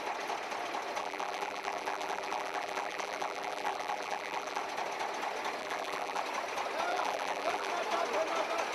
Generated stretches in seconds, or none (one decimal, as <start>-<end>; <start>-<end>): 1.0-4.6; 5.6-6.2; 6.9-7.7